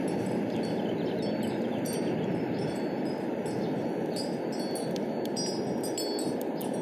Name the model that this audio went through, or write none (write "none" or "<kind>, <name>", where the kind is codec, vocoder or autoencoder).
none